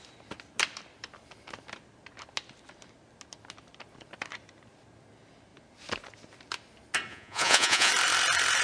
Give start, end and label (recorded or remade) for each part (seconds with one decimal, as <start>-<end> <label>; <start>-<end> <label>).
0.0-7.1 recorded; 7.1-7.9 remade; 7.9-8.6 recorded